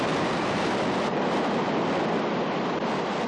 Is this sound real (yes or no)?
yes